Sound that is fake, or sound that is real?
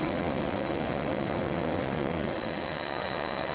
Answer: fake